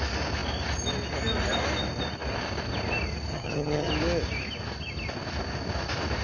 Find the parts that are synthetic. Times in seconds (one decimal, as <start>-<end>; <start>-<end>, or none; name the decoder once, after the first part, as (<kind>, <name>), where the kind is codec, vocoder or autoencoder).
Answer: 3.3-3.9 (vocoder, HiFi-GAN)